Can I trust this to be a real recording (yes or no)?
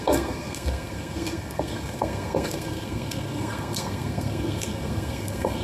no